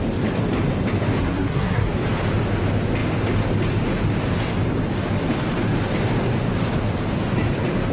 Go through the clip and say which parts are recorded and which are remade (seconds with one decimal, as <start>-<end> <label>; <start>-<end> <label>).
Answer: 0.0-1.2 recorded; 1.2-1.9 remade; 1.9-7.9 recorded